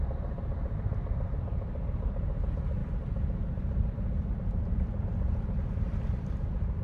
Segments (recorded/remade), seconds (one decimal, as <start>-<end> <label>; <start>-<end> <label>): 0.0-6.8 remade